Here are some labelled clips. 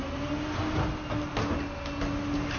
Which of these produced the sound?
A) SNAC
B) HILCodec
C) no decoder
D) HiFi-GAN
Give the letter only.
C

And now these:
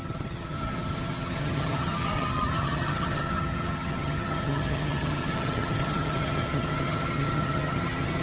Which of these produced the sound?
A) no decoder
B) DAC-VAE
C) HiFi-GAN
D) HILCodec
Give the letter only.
C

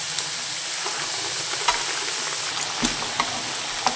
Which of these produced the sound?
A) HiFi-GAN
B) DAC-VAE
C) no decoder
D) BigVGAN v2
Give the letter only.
C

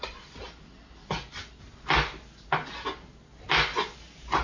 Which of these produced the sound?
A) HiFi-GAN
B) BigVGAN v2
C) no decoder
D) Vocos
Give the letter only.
C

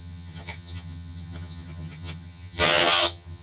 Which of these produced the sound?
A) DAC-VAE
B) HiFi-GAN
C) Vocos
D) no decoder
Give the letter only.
B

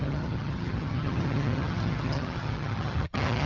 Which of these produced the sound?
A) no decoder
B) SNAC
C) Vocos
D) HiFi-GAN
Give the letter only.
D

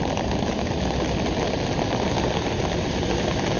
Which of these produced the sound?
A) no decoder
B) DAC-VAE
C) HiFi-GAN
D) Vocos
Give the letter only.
A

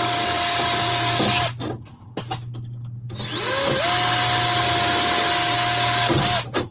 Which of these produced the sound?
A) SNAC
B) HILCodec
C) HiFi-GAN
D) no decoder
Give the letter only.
D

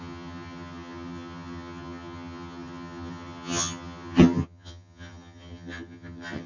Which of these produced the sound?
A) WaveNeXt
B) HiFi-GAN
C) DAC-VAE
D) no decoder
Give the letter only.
B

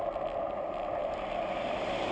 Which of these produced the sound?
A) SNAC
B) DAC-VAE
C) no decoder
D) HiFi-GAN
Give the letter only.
C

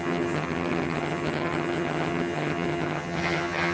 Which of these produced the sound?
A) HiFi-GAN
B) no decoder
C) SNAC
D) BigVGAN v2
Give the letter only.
A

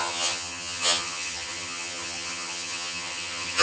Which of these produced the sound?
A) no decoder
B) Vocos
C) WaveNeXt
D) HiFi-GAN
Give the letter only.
D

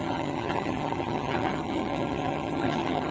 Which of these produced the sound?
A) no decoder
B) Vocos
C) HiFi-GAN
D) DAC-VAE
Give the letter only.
C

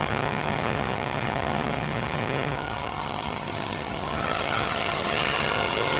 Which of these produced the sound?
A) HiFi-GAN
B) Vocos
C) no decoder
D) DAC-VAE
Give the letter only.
A